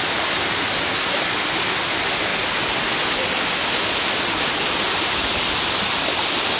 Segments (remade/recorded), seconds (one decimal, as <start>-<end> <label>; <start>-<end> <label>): 0.0-6.6 recorded